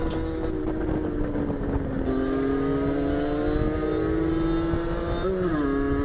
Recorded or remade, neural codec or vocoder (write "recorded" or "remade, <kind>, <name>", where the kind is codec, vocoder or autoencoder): recorded